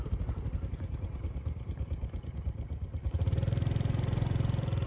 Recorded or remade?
remade